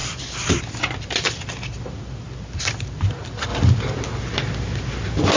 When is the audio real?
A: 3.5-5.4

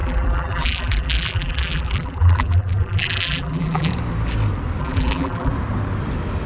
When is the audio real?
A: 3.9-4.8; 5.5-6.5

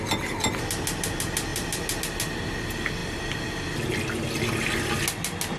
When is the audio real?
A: 0.0-5.6

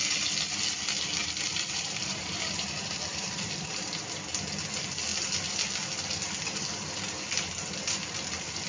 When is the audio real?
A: 0.0-1.2; 3.5-8.7

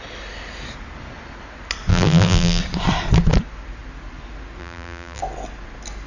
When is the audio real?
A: 0.0-1.9; 2.6-4.6; 5.2-6.1